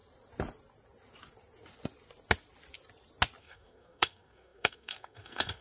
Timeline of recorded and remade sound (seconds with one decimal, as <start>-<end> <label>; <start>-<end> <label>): 0.0-3.4 recorded; 3.4-5.6 remade